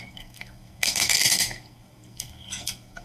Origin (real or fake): fake